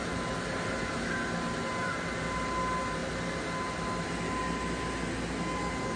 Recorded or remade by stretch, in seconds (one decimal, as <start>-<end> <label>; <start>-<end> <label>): 0.0-6.0 recorded